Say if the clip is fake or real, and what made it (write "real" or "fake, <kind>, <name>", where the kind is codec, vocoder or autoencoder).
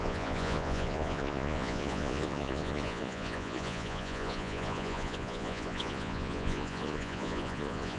fake, vocoder, Vocos